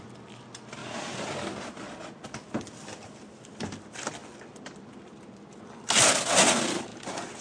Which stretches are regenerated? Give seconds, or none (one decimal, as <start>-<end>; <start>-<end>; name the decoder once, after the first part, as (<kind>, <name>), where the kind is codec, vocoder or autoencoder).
none